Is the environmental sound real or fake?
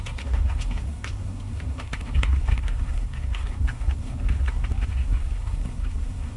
fake